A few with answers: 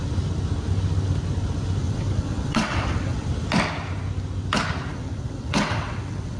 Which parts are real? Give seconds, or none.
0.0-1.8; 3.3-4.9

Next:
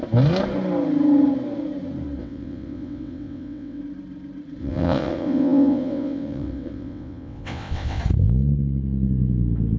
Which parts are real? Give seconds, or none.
0.0-2.2; 3.8-4.6; 8.0-9.8

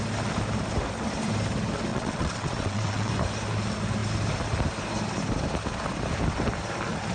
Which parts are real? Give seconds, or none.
0.0-1.9; 3.1-7.1

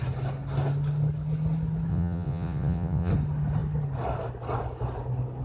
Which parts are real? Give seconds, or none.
0.0-1.9; 3.1-5.4

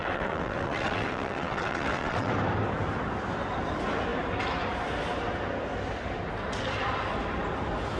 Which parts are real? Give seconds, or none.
2.3-8.0

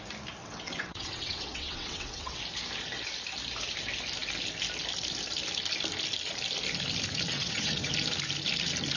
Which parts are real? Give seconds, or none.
0.0-0.4; 2.4-7.3; 7.9-9.0

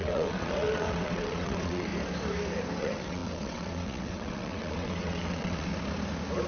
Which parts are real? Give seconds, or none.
1.9-2.8; 5.7-6.5

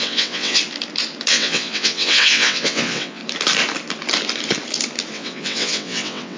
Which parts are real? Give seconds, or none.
0.6-1.3; 3.2-5.1